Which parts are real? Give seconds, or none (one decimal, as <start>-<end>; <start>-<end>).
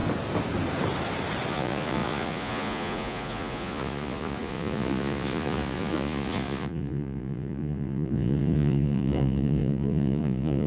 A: 0.0-1.5